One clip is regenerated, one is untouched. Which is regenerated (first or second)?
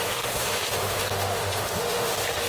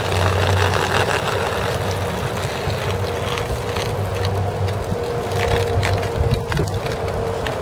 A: first